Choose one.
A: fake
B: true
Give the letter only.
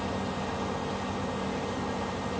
B